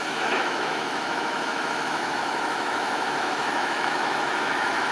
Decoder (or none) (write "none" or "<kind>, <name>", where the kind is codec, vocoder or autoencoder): autoencoder, DAC-VAE